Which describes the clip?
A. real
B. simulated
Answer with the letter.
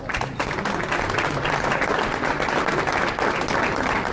A